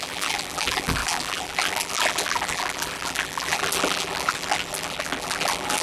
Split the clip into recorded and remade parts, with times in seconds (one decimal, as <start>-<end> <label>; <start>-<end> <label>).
0.0-5.8 remade